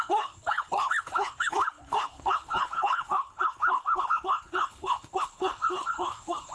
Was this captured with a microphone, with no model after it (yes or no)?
no